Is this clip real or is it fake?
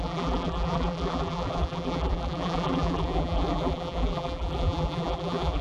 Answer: fake